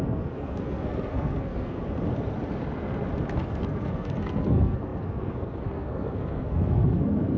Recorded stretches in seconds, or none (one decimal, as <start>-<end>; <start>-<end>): 1.8-3.4